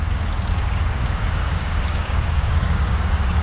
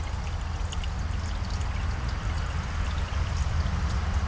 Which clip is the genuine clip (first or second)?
second